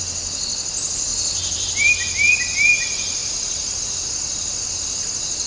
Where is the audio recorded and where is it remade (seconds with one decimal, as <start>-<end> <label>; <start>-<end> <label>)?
0.0-1.1 recorded; 1.1-1.9 remade; 1.9-3.2 recorded; 3.2-3.8 remade; 3.8-4.4 recorded; 4.4-5.1 remade; 5.1-5.5 recorded